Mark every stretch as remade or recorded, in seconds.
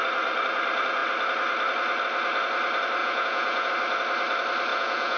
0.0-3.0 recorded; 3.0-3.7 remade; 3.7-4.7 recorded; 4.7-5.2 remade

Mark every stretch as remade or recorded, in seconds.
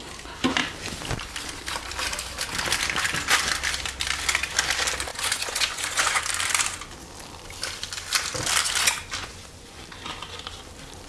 0.0-5.1 recorded; 5.1-6.2 remade; 6.2-9.2 recorded; 9.2-9.8 remade; 9.8-11.1 recorded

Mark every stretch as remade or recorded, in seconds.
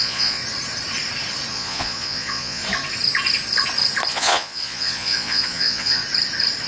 0.0-0.4 remade; 0.4-1.5 recorded; 1.5-2.6 remade; 2.6-4.1 recorded; 4.1-6.0 remade; 6.0-6.7 recorded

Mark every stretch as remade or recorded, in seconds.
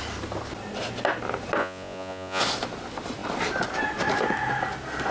0.0-1.6 recorded; 1.6-2.4 remade; 2.4-5.1 recorded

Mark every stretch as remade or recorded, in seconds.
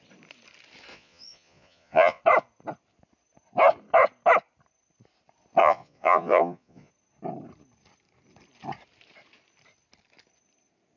0.0-0.9 recorded; 0.9-2.2 remade; 2.2-5.6 recorded; 5.6-6.9 remade; 6.9-11.0 recorded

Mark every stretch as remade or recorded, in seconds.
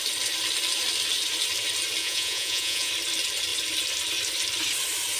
0.0-2.0 recorded; 2.0-2.9 remade; 2.9-5.2 recorded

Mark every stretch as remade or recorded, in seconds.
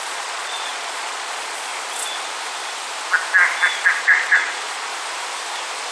0.0-1.7 remade; 1.7-4.0 recorded; 4.0-4.9 remade; 4.9-5.9 recorded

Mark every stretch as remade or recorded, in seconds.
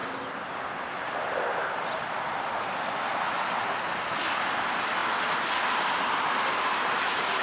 0.0-7.4 recorded